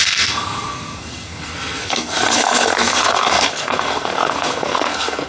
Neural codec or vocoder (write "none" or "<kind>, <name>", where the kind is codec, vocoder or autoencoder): codec, SNAC